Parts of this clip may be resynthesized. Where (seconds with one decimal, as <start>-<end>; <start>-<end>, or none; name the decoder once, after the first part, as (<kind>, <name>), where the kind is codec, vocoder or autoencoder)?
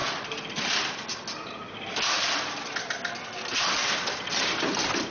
none